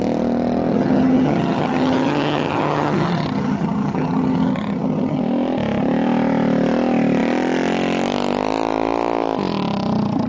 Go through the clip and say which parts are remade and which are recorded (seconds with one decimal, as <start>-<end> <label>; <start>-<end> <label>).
0.0-0.7 recorded; 0.7-5.2 remade; 5.2-10.3 recorded